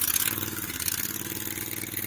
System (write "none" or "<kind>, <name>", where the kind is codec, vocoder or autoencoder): none